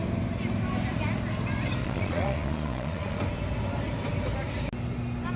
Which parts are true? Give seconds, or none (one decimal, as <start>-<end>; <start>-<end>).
0.0-1.8; 3.2-5.4